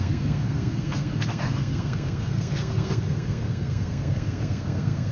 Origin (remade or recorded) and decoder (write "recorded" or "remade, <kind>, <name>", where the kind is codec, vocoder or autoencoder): remade, codec, SNAC